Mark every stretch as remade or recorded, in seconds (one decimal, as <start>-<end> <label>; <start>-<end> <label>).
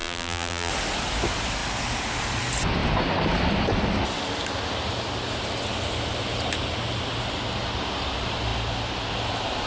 0.0-0.7 remade; 0.7-9.7 recorded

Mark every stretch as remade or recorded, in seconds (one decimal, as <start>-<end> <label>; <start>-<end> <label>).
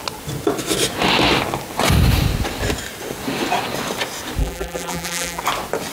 0.0-4.4 recorded; 4.4-5.4 remade; 5.4-5.9 recorded